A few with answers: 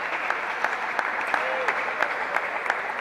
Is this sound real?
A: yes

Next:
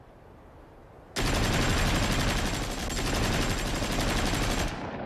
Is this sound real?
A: yes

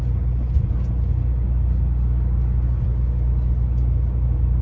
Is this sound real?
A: yes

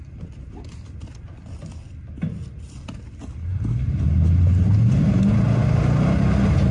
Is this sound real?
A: yes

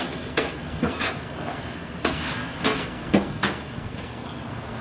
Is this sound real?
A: no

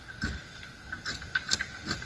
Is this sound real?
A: yes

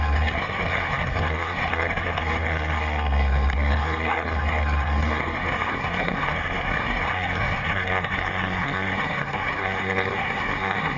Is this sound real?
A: no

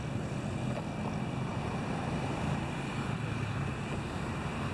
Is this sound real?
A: yes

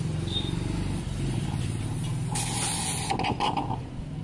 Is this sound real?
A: yes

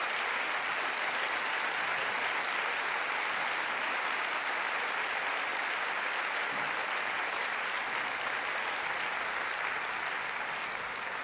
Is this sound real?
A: yes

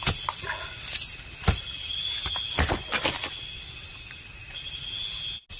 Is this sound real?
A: yes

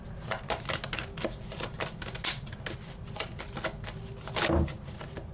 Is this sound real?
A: yes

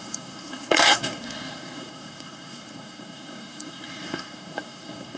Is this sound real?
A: no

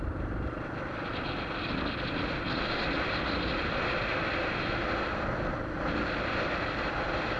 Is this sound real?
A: yes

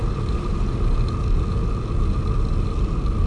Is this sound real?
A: yes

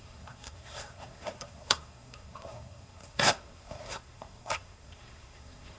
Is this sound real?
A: no